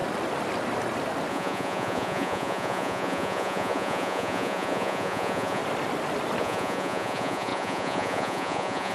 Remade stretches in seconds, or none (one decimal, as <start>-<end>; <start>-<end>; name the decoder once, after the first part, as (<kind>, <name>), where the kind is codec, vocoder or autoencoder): 1.3-5.6 (vocoder, Vocos); 6.4-8.9